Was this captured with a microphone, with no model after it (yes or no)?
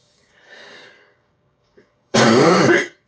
no